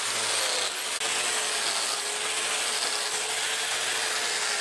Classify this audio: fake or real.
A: real